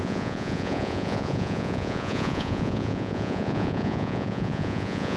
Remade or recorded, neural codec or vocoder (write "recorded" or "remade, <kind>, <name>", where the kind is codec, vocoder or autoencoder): remade, vocoder, Vocos